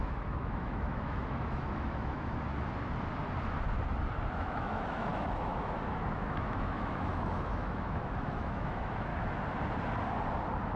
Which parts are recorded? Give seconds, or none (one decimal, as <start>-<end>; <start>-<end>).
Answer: 2.5-4.3; 9.1-10.8